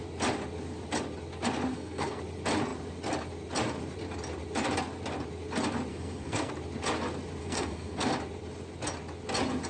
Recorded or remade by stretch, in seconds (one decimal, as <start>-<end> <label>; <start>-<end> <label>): 0.0-1.7 recorded; 1.7-2.2 remade; 2.2-5.9 recorded; 5.9-6.5 remade; 6.5-7.4 recorded; 7.4-8.1 remade; 8.1-9.7 recorded